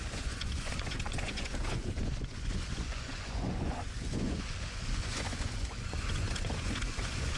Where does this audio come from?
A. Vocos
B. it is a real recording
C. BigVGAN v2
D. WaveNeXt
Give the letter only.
A